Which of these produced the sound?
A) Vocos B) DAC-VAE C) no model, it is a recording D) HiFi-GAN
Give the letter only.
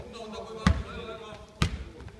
C